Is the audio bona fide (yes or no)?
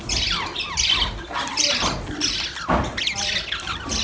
yes